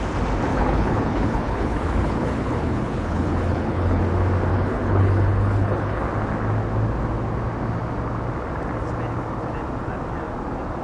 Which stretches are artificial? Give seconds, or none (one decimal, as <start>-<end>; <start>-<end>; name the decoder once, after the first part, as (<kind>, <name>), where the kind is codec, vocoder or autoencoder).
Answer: 0.5-4.0 (codec, HILCodec); 4.5-6.0